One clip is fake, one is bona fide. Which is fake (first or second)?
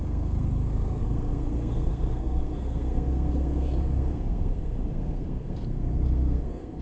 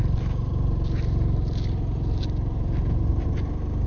first